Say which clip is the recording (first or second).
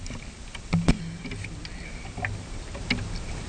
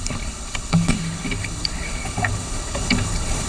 first